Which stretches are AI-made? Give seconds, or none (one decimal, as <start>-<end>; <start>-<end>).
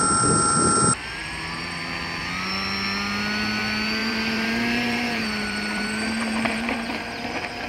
1.2-1.8; 4.0-7.7